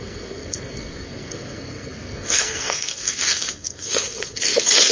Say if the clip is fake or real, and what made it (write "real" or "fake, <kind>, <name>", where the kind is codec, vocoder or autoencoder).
fake, codec, SNAC